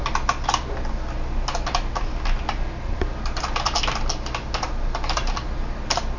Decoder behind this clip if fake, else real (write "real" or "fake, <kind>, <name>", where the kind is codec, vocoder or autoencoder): real